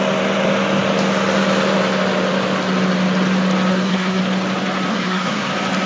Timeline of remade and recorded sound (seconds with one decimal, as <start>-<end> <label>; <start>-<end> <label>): 0.0-3.7 recorded; 3.7-4.2 remade; 4.2-4.9 recorded; 4.9-5.5 remade; 5.5-5.9 recorded